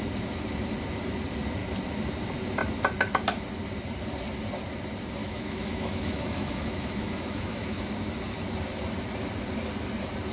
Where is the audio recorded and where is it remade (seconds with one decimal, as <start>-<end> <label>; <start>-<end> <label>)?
0.0-5.2 recorded; 5.2-7.9 remade; 7.9-10.3 recorded